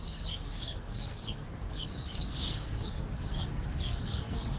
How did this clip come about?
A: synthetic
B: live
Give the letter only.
A